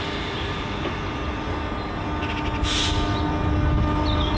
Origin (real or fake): real